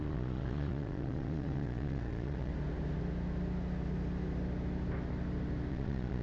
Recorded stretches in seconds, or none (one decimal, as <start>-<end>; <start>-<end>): 2.5-5.7